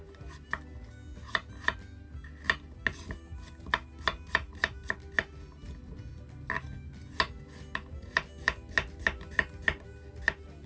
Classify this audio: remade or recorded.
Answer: recorded